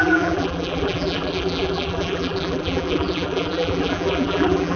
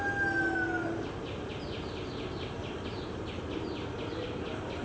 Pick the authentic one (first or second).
second